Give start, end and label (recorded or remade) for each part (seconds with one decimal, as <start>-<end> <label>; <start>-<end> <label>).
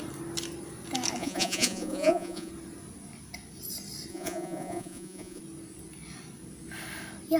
0.0-1.2 recorded; 1.2-2.5 remade; 2.5-4.1 recorded; 4.1-5.4 remade; 5.4-7.4 recorded